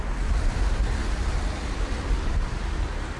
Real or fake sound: real